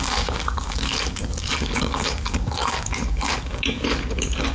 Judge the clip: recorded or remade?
remade